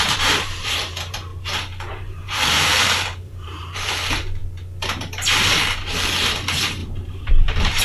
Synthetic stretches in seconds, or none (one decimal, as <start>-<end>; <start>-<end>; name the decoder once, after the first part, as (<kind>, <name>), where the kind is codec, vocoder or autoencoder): 0.0-1.3 (vocoder, BigVGAN v2); 1.9-4.4; 5.4-7.8